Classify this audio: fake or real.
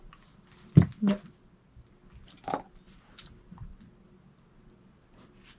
real